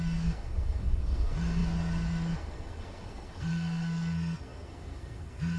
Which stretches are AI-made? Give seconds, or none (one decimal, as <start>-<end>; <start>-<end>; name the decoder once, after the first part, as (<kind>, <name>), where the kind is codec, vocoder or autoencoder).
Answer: 0.0-5.6 (codec, SNAC)